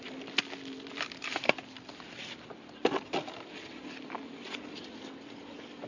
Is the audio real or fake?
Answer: real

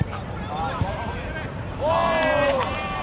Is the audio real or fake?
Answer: real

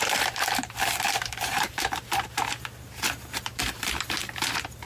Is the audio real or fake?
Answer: fake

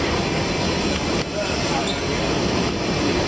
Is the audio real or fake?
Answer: real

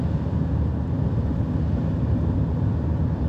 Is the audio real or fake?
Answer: real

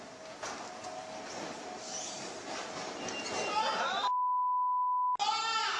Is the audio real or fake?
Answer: real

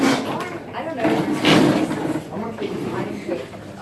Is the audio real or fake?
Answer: real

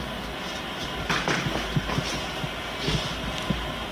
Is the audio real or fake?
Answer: real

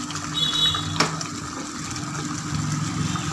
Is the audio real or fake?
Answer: real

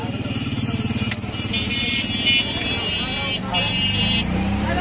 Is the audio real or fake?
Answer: real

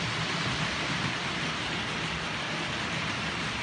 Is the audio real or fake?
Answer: fake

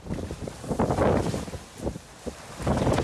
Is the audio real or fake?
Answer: real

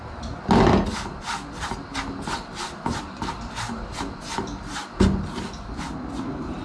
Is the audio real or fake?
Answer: real